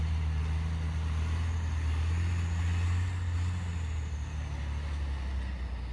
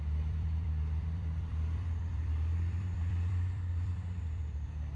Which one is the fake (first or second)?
second